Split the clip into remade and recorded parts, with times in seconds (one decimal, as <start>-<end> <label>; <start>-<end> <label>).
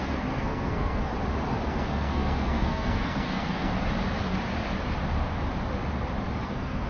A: 0.0-1.1 remade; 1.1-1.7 recorded; 1.7-3.7 remade; 3.7-6.4 recorded; 6.4-6.9 remade